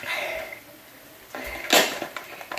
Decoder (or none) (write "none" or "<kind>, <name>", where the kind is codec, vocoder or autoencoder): none